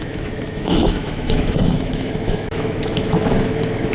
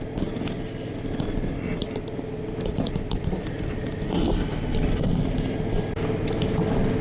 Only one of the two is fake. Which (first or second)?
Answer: first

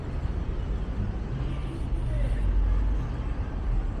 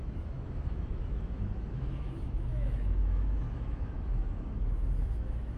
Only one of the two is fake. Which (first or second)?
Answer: second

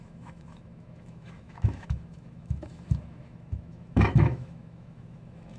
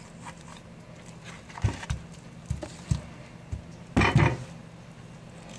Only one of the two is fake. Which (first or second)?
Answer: first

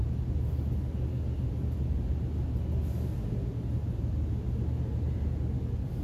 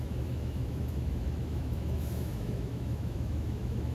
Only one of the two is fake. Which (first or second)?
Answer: second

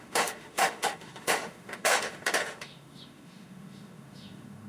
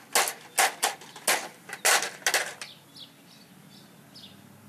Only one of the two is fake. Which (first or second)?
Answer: first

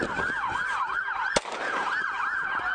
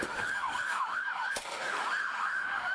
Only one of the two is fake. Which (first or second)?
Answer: second